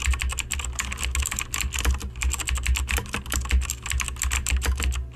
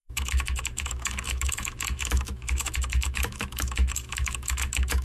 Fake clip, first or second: second